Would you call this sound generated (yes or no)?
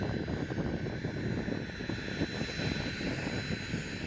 no